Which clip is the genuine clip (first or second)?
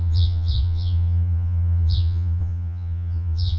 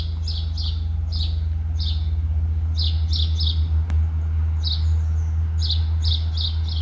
second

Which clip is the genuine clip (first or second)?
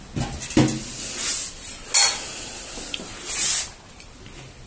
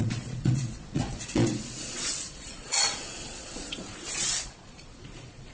first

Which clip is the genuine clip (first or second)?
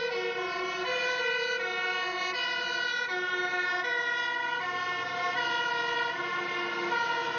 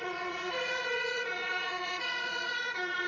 first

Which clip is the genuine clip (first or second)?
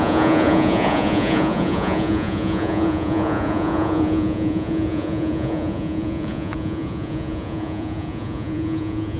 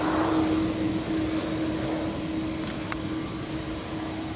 second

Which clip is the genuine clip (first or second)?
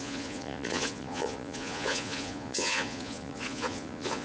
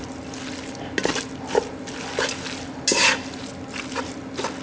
second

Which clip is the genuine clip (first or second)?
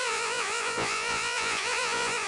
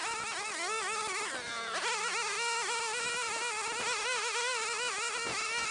second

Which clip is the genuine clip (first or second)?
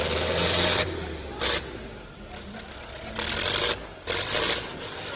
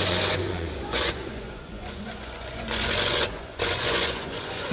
first